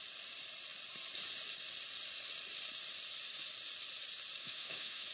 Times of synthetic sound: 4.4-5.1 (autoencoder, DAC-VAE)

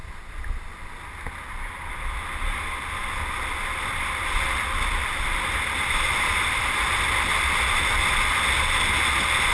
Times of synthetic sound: none